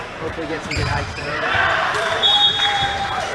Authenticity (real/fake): fake